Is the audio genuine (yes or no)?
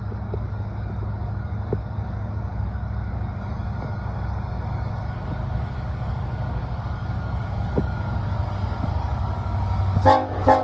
no